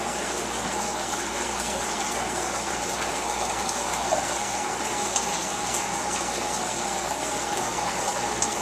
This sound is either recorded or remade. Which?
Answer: remade